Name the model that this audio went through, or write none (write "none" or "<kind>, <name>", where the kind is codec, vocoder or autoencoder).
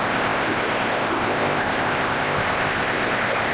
codec, ZipCodec